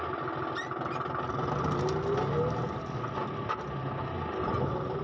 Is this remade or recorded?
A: recorded